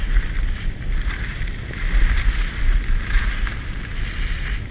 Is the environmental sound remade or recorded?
recorded